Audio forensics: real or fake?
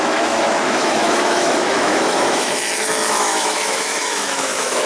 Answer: fake